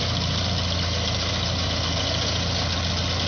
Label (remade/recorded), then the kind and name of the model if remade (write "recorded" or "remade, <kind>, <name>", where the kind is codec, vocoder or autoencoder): recorded